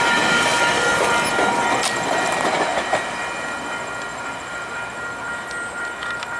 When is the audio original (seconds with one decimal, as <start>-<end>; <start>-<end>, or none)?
0.0-4.1; 4.7-6.4